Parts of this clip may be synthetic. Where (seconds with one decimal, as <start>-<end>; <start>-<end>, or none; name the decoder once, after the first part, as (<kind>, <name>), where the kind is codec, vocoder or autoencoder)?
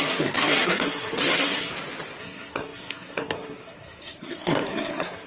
0.0-1.7 (codec, SNAC); 2.2-5.3